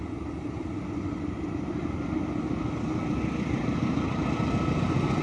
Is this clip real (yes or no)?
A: yes